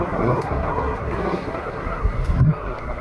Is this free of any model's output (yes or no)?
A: no